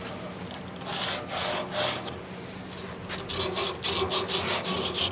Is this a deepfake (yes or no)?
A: no